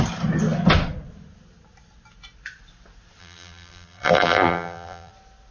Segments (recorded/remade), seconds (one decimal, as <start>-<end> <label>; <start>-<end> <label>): 0.0-3.2 recorded; 3.2-5.1 remade; 5.1-5.5 recorded